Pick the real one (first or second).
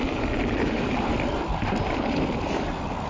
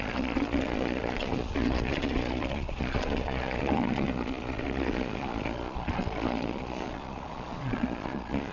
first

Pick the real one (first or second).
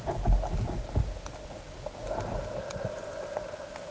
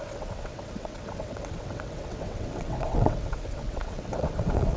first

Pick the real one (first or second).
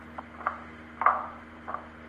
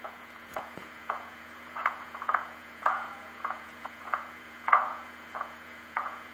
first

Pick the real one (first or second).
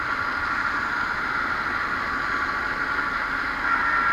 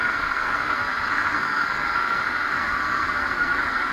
first